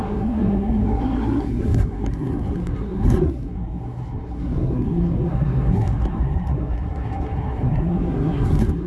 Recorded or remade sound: remade